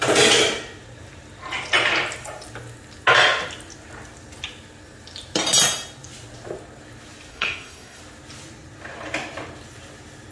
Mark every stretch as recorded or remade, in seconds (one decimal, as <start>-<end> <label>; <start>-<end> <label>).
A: 0.0-7.3 recorded; 7.3-8.0 remade; 8.0-10.3 recorded